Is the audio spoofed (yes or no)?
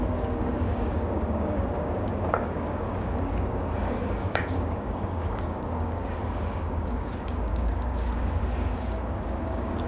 yes